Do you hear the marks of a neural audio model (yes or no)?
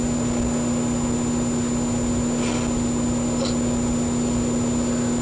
no